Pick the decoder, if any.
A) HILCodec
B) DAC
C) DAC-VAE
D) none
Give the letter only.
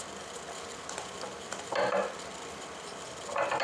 D